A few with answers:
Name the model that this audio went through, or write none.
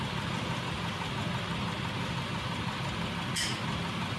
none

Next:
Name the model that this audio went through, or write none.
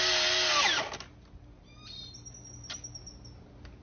none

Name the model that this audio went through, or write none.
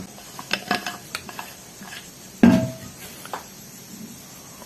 none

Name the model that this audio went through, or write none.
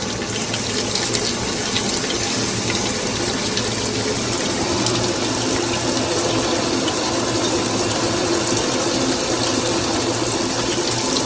none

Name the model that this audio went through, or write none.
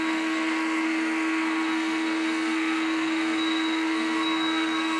codec, SNAC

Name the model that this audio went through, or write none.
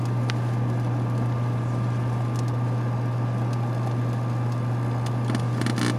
none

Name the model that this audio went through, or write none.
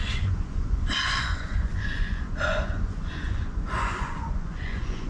vocoder, Vocos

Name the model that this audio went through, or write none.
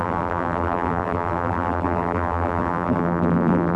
vocoder, BigVGAN v2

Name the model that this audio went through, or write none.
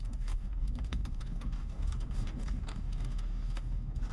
codec, DAC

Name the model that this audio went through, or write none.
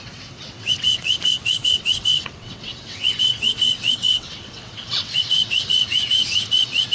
vocoder, WaveNeXt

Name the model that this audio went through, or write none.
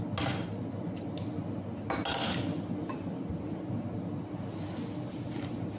none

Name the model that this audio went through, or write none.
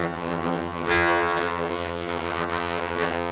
vocoder, HiFi-GAN